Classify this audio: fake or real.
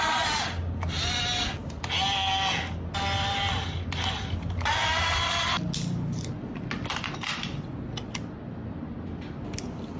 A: real